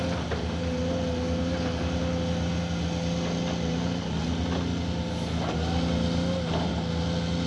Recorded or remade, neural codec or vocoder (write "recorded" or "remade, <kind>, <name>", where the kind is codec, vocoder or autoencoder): recorded